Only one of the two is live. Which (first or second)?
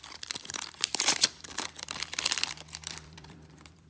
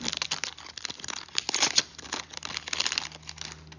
second